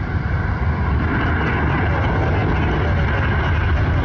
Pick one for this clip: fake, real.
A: real